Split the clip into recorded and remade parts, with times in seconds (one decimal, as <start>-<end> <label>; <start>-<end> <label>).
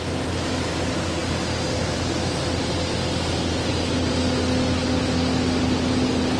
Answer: 0.0-6.4 recorded